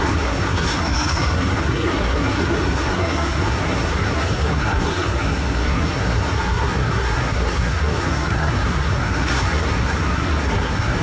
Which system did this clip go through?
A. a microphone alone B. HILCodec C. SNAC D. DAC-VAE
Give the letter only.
C